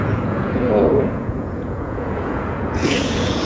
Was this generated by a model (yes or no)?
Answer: yes